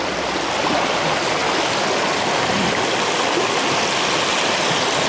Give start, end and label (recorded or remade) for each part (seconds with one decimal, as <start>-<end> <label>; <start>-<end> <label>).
0.0-5.1 recorded